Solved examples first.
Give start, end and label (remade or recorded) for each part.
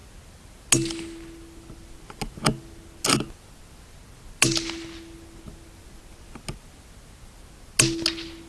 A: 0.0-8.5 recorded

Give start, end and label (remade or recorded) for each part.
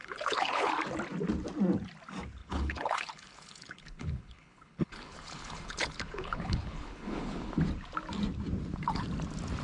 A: 0.0-0.7 remade; 0.7-2.4 recorded; 2.4-7.5 remade; 7.5-9.6 recorded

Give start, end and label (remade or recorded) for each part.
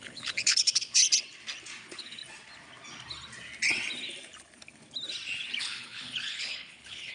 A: 0.0-1.0 remade; 1.0-1.8 recorded; 1.8-2.2 remade; 2.2-5.6 recorded; 5.6-7.1 remade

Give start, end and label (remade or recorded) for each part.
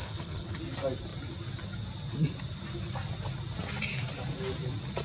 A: 0.0-0.6 remade; 0.6-5.0 recorded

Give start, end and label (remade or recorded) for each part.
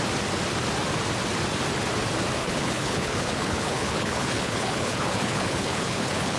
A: 0.0-2.4 recorded; 2.4-6.4 remade